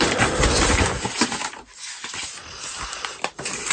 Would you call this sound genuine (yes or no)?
yes